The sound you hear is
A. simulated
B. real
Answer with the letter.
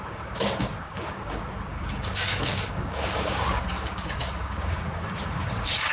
A